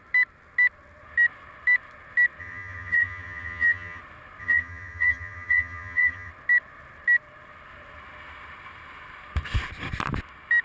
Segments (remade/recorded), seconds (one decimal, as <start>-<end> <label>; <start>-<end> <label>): 0.0-2.4 recorded; 2.4-4.0 remade; 4.0-4.4 recorded; 4.4-6.3 remade; 6.3-10.6 recorded